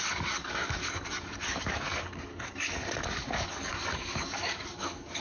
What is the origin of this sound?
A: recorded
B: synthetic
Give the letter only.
B